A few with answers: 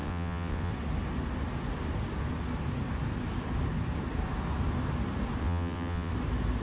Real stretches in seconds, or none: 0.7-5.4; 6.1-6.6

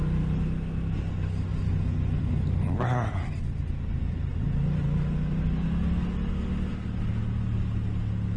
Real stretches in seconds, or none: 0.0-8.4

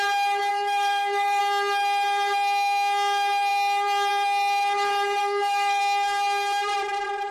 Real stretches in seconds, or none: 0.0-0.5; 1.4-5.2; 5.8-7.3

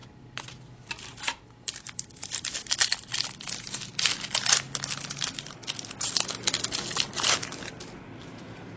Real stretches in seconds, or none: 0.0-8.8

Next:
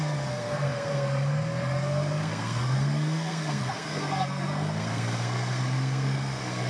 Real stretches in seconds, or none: none